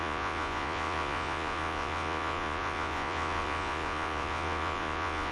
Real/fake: fake